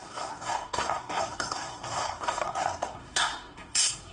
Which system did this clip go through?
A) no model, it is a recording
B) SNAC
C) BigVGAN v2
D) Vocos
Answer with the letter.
B